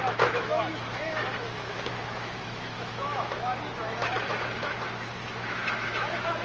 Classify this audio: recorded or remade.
remade